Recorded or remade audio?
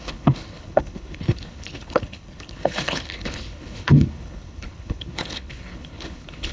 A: remade